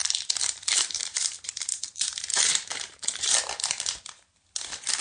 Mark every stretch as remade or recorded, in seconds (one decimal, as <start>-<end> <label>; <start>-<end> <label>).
0.0-1.2 remade; 1.2-1.7 recorded; 1.7-3.5 remade; 3.5-5.0 recorded